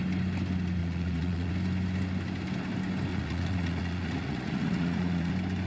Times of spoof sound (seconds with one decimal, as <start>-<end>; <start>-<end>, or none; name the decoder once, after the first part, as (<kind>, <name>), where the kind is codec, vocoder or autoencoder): 0.8-1.5 (vocoder, Vocos); 3.1-5.3